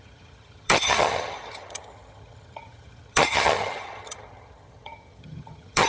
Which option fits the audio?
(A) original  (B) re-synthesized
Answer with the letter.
B